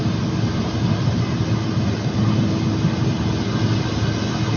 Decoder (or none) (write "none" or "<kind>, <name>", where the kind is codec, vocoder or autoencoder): none